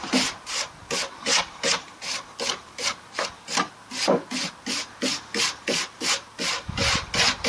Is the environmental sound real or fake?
real